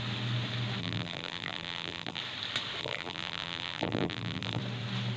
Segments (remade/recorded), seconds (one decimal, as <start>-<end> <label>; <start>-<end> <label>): 0.0-0.8 recorded; 0.8-2.2 remade; 2.2-2.8 recorded; 2.8-4.6 remade; 4.6-5.2 recorded